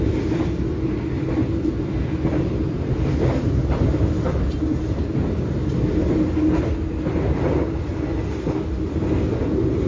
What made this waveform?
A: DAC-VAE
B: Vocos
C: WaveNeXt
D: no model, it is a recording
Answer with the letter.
D